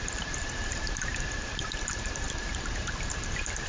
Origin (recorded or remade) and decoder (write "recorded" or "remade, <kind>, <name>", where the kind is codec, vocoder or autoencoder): remade, vocoder, BigVGAN v2